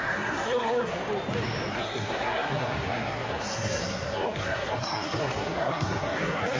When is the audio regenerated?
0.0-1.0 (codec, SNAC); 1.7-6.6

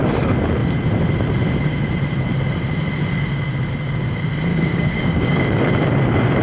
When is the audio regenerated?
4.5-5.4 (codec, DAC)

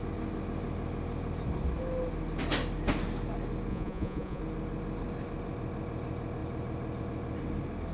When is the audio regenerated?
3.7-4.4 (vocoder, Vocos)

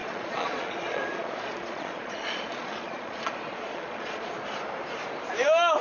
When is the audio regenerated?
0.0-4.4 (vocoder, Vocos)

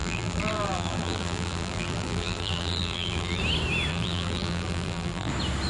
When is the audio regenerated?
0.0-3.4 (vocoder, BigVGAN v2); 3.9-5.3

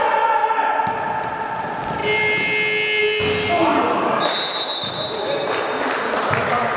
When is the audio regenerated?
none

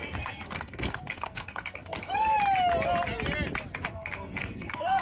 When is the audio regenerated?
0.0-2.3 (codec, SNAC); 3.9-5.0